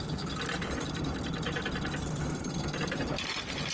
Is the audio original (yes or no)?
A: yes